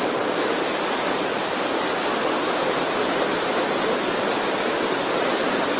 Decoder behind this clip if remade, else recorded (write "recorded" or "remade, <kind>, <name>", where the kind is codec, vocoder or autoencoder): recorded